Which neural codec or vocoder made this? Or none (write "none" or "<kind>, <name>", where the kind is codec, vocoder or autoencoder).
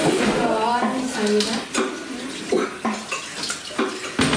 none